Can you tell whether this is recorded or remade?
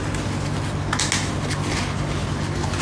recorded